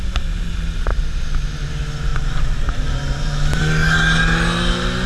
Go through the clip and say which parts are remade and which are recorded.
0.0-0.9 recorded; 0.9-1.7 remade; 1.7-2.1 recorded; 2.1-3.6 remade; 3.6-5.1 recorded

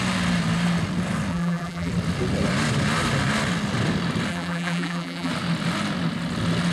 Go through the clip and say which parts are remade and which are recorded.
0.0-1.3 recorded; 1.3-1.9 remade; 1.9-4.3 recorded; 4.3-5.3 remade; 5.3-6.7 recorded

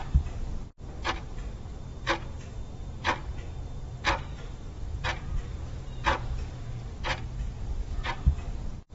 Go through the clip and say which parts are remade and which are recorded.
0.0-1.9 remade; 1.9-2.7 recorded; 2.7-7.1 remade; 7.1-7.6 recorded; 7.6-8.9 remade

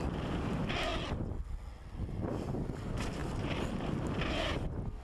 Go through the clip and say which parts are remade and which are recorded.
0.0-5.0 recorded